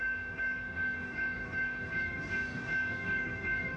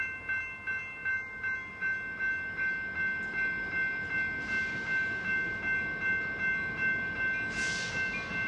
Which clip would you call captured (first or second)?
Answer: second